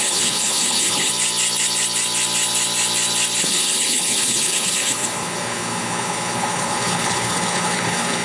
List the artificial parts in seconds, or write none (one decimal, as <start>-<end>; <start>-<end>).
0.0-1.1; 3.4-8.2